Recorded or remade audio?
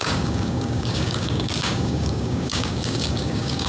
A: remade